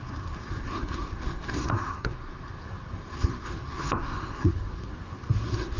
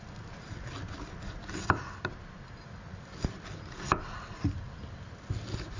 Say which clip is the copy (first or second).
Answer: first